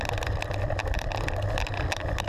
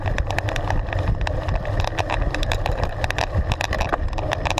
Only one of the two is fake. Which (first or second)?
second